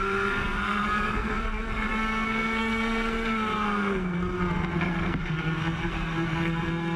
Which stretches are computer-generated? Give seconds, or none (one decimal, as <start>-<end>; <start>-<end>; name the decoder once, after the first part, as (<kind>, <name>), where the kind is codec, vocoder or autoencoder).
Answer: 0.0-7.0 (codec, SNAC)